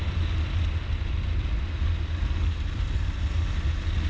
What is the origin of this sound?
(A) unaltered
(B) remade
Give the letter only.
A